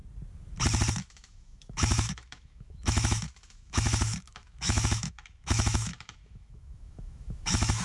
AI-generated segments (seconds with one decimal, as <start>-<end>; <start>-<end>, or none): 0.9-7.8